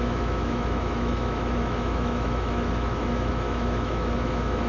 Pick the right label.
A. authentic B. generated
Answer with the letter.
B